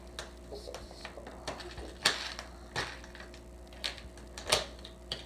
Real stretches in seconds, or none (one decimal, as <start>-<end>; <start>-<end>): 0.0-5.3